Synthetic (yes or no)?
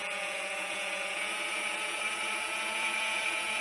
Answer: yes